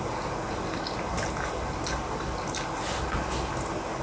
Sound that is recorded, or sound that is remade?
recorded